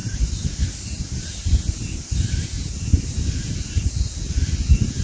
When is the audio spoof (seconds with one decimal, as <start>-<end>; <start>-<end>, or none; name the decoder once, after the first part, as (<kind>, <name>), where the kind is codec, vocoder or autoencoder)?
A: none